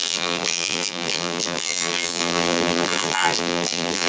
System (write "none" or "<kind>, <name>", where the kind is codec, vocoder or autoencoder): vocoder, BigVGAN v2